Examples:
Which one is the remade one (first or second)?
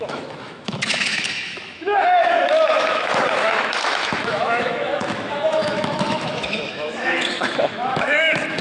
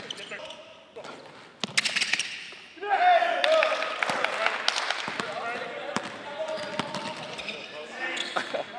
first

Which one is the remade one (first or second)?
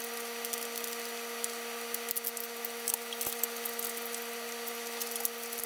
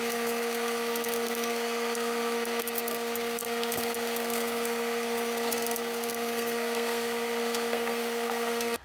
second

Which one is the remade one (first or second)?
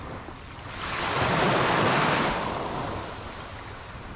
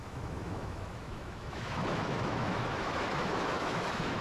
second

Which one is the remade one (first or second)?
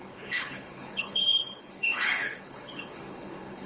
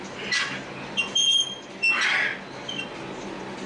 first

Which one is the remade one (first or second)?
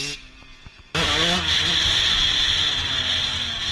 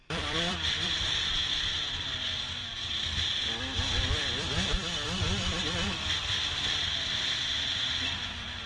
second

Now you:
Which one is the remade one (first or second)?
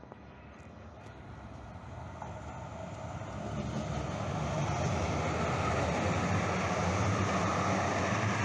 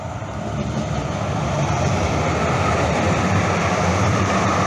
second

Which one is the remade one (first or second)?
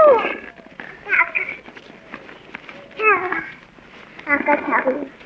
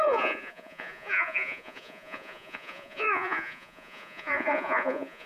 second